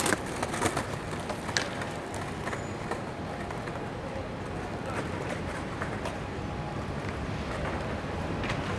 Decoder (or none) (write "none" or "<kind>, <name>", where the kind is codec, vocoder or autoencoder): none